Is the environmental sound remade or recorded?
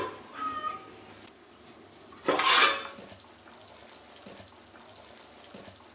recorded